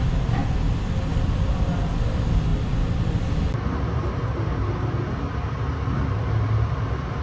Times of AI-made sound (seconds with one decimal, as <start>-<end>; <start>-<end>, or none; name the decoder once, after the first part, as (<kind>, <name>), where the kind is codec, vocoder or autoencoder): none